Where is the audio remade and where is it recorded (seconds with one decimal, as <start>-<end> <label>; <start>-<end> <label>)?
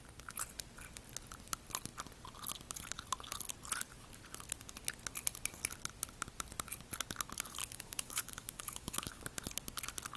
0.0-7.6 recorded; 7.6-9.2 remade; 9.2-10.2 recorded